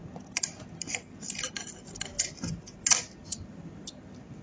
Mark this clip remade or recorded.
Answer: recorded